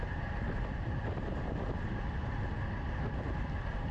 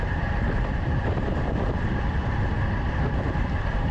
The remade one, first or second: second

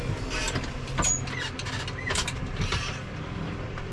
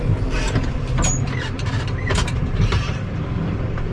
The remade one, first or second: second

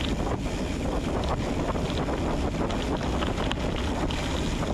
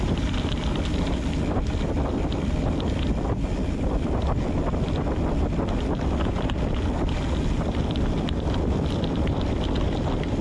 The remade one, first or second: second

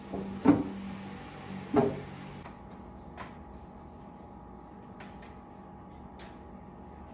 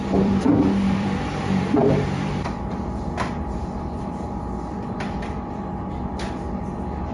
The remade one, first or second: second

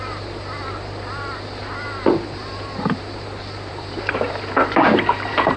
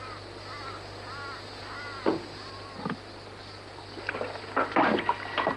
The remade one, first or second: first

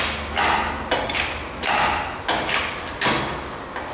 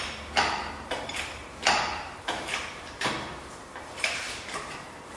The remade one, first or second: second